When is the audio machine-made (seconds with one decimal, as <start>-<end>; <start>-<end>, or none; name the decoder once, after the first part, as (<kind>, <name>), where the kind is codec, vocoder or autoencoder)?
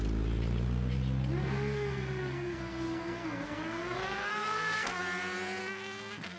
1.4-5.0 (codec, SNAC); 5.6-6.4